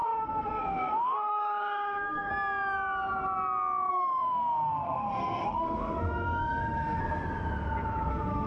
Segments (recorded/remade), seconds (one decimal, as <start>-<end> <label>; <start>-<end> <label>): 0.0-2.3 remade; 2.3-3.9 recorded; 3.9-7.0 remade; 7.0-8.1 recorded; 8.1-8.5 remade